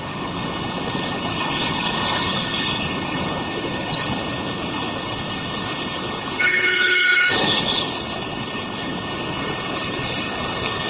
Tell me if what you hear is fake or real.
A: fake